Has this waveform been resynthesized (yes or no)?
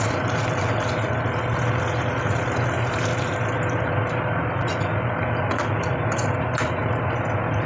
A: no